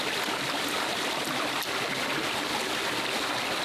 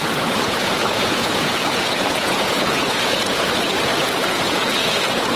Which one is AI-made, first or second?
second